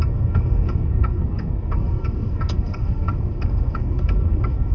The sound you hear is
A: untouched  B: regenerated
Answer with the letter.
B